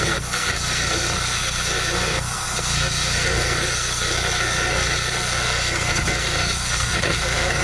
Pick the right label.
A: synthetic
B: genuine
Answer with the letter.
A